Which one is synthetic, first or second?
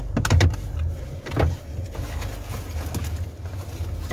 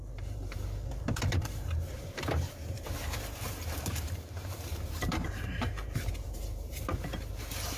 second